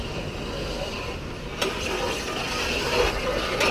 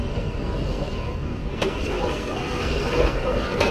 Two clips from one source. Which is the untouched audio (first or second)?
first